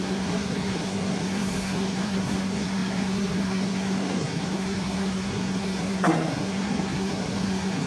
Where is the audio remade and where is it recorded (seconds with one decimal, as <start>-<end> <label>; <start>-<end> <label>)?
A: 0.0-7.9 remade